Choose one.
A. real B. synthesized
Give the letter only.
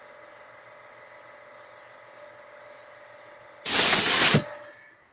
A